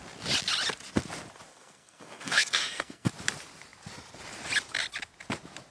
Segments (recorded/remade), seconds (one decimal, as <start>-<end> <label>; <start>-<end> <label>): 0.0-1.5 recorded; 1.5-3.1 remade; 3.1-5.7 recorded